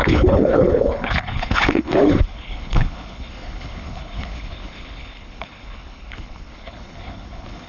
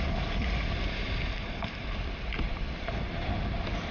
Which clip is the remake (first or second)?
first